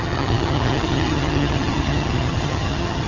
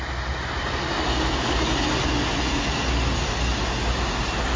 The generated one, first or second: first